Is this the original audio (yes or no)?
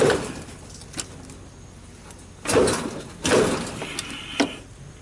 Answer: yes